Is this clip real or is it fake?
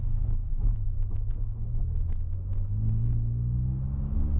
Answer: fake